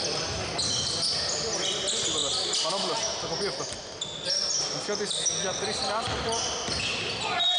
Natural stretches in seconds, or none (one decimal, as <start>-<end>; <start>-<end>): 0.0-7.6